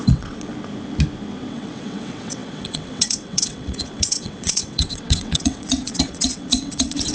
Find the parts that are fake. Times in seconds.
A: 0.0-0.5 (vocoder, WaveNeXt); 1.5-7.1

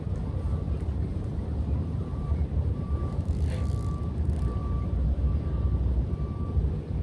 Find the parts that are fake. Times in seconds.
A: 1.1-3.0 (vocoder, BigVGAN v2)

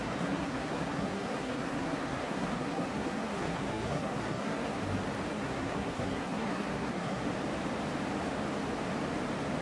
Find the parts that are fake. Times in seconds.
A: 0.0-4.8 (codec, SNAC); 5.3-7.2

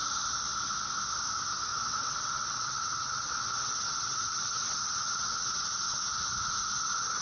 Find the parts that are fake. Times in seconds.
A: 1.7-6.0 (vocoder, WaveNeXt)

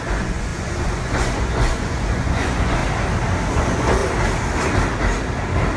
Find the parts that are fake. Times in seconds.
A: 0.0-2.8 (vocoder, Vocos); 3.5-4.0

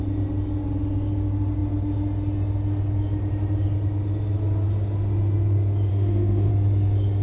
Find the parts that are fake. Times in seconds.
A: 5.9-6.5 (autoencoder, DAC-VAE)